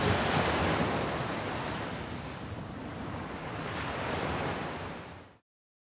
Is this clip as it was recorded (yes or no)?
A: yes